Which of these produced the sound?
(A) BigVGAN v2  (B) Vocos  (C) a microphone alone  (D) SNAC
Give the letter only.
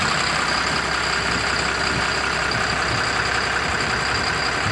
C